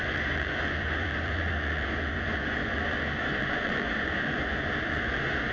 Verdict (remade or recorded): remade